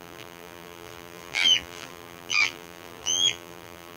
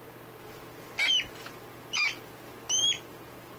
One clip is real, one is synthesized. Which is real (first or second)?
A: second